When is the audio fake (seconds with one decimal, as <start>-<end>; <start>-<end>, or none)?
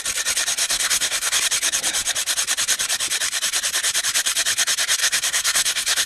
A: 0.6-1.4; 5.0-6.1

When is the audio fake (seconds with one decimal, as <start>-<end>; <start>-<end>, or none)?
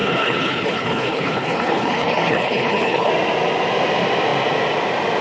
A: 0.0-3.1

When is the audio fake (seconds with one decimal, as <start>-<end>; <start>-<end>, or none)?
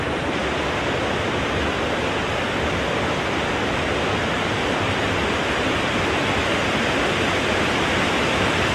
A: none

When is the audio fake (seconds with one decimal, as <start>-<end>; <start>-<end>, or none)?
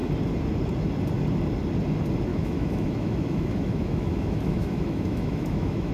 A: 2.3-5.9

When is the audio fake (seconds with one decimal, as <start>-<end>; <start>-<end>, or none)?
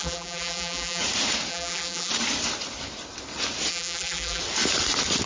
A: 0.0-1.0; 1.5-2.1; 3.7-4.4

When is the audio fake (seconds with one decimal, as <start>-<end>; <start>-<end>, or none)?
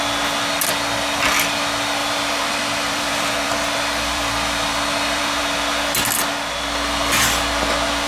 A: 2.0-5.4